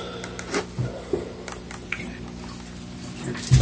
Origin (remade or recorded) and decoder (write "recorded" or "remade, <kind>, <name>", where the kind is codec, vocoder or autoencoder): recorded